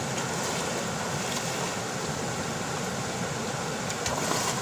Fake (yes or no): no